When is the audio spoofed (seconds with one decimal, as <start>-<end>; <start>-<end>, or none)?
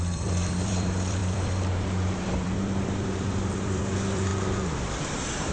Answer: 0.0-4.3; 5.0-5.5